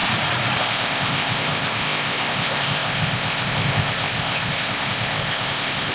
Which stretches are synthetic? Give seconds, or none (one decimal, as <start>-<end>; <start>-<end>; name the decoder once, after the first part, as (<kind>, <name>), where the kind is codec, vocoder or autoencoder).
0.6-5.9 (codec, ZipCodec)